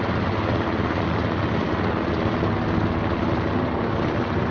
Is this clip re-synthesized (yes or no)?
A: no